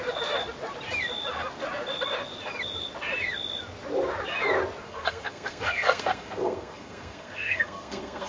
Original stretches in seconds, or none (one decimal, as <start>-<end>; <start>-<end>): 0.0-4.8

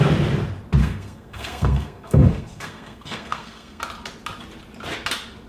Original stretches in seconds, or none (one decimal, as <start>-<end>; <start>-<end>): 0.0-0.8; 3.8-5.5

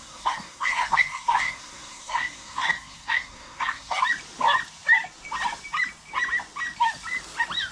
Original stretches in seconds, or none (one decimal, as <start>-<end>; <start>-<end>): 4.0-7.7

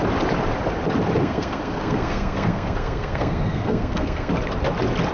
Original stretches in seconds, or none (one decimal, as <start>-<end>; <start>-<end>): 0.0-1.2; 4.3-5.1

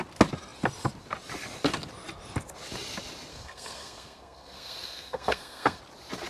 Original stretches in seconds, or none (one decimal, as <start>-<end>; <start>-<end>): 0.0-3.3; 5.8-6.3

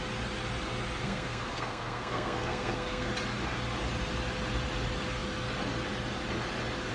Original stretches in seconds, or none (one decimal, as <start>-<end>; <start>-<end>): 0.0-1.0; 3.1-6.9

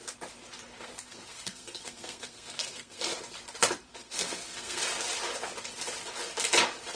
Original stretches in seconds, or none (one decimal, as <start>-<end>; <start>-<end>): 0.0-0.8; 3.1-3.9; 4.8-7.0